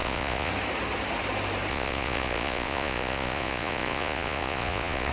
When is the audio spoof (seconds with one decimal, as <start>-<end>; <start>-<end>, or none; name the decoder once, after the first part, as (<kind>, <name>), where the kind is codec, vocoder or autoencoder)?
0.0-0.5 (vocoder, Vocos); 1.7-5.1